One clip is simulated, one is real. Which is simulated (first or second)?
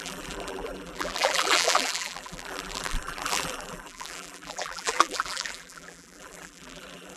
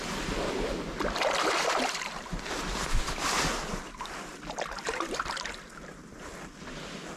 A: first